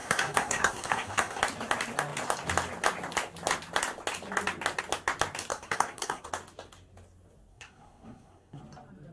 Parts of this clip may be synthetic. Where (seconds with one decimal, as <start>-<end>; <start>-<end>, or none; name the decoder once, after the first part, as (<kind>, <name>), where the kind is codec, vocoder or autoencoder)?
0.0-1.4 (codec, SNAC); 5.5-6.3; 7.5-8.6